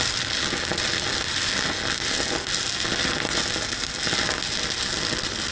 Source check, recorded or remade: recorded